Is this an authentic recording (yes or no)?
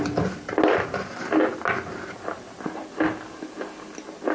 yes